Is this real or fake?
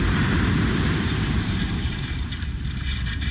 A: fake